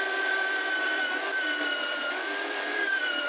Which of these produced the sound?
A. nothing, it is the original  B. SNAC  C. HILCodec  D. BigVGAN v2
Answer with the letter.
D